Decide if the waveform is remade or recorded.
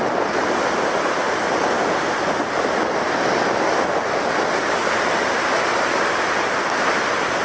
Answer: recorded